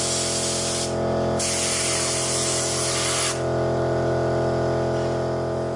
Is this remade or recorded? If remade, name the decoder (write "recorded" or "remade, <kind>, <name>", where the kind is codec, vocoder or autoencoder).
recorded